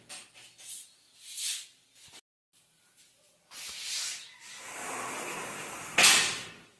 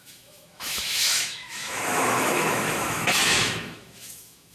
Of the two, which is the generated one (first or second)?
second